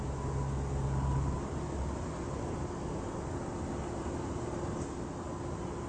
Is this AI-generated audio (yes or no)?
no